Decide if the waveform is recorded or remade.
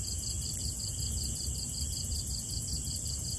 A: recorded